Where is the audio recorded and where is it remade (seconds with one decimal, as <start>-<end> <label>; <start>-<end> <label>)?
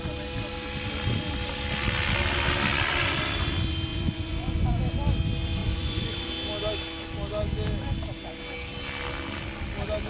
0.0-3.9 recorded; 3.9-4.8 remade; 4.8-5.6 recorded; 5.6-6.3 remade; 6.3-10.1 recorded